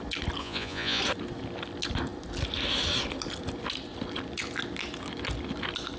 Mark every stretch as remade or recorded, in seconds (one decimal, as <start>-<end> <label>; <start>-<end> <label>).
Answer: 0.0-0.4 recorded; 0.4-1.0 remade; 1.0-6.0 recorded